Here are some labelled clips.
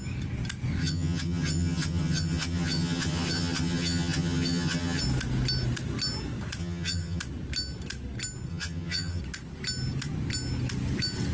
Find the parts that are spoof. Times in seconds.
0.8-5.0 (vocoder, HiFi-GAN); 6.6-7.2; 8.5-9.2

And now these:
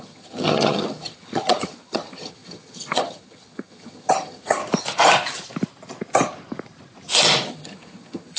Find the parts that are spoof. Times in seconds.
0.0-4.6 (vocoder, HiFi-GAN); 7.5-8.4

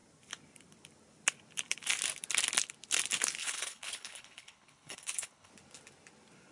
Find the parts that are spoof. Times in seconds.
3.4-5.5 (codec, HILCodec)

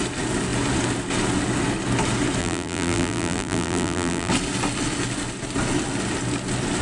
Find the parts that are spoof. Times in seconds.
2.4-4.3 (vocoder, BigVGAN v2)

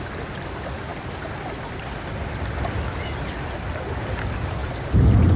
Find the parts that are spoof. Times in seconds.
4.6-5.4 (vocoder, BigVGAN v2)

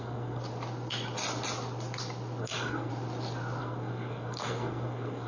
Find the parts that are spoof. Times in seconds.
0.0-0.4 (codec, SNAC); 2.4-2.9; 3.6-5.3